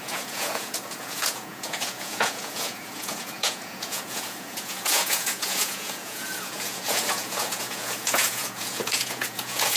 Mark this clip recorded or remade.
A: remade